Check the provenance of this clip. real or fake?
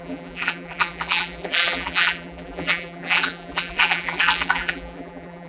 fake